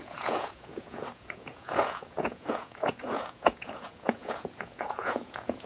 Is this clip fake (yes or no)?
yes